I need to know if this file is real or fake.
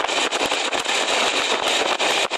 real